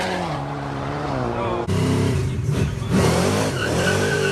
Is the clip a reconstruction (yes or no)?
yes